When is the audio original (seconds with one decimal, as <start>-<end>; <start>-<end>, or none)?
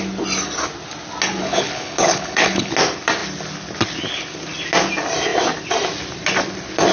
0.0-1.4; 2.7-6.9